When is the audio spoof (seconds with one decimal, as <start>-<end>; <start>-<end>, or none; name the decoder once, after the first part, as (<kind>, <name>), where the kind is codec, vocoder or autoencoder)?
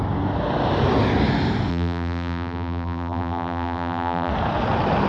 1.7-4.3 (vocoder, BigVGAN v2)